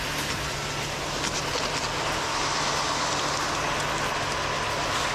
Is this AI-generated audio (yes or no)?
no